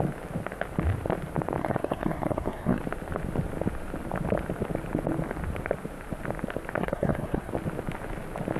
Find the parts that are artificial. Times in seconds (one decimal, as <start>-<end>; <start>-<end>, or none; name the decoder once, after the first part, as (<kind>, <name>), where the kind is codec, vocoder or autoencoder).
1.6-2.8 (codec, SNAC); 6.8-7.5